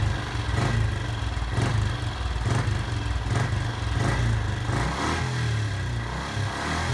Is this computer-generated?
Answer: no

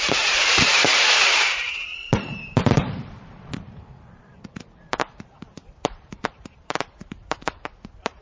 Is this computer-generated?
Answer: yes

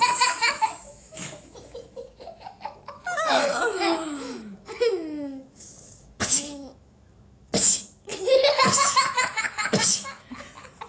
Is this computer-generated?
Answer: yes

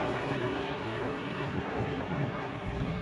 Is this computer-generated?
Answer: yes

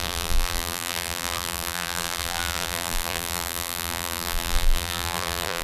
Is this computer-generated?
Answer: yes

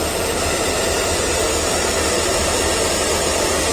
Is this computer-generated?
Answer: no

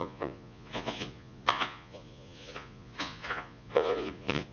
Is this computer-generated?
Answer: yes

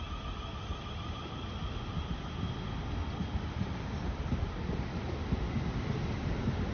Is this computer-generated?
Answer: no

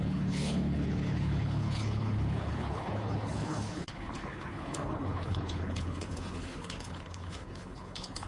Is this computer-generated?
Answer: yes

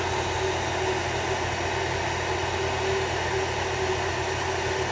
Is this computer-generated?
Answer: no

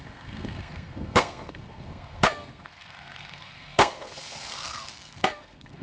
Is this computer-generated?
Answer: yes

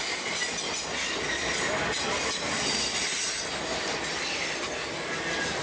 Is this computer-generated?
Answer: no